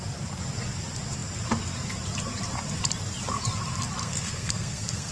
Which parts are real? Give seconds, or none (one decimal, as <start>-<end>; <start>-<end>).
0.0-4.0